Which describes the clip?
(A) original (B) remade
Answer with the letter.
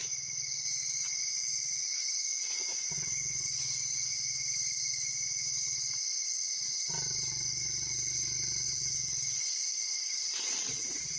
A